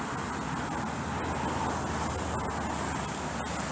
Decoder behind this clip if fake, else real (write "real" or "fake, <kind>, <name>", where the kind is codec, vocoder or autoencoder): real